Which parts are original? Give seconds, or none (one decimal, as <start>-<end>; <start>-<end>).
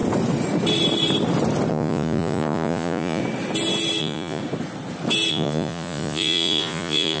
0.0-1.7; 3.2-4.0; 4.4-5.3